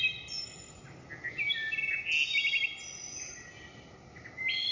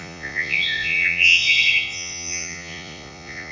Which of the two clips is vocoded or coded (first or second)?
second